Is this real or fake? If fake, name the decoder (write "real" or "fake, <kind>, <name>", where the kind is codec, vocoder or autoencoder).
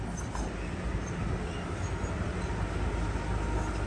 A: real